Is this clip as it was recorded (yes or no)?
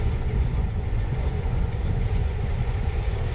no